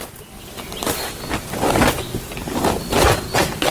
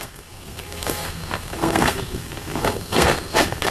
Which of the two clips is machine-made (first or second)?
second